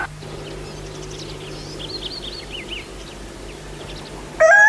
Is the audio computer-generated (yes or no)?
no